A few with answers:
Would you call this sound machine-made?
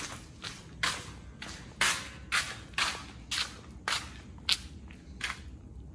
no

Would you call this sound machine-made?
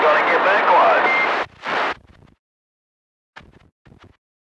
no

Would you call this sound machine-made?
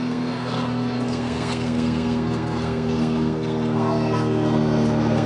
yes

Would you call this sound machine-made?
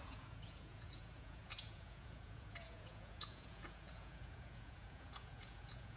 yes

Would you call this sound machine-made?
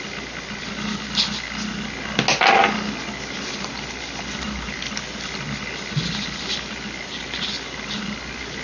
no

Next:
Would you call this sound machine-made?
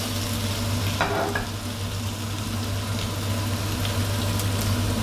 no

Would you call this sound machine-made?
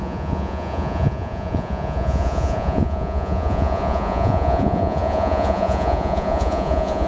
yes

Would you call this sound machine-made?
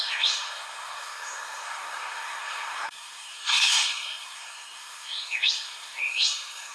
yes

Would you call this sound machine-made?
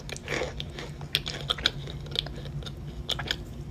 no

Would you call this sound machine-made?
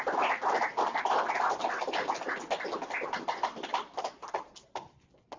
no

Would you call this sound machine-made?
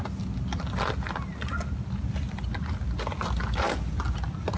no